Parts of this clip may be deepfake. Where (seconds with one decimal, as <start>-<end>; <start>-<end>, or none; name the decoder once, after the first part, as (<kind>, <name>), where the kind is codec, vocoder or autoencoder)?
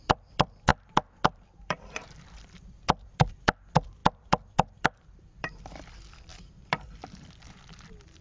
0.0-8.2 (vocoder, BigVGAN v2)